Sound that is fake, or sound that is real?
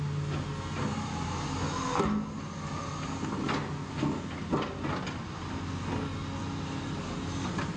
real